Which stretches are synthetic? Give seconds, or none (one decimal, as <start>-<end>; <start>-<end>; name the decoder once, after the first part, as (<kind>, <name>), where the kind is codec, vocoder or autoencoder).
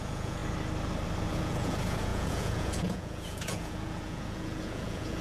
0.0-0.4 (vocoder, Vocos); 1.3-5.2